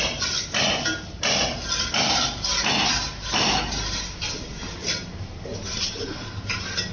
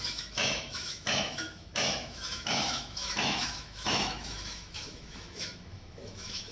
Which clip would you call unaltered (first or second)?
first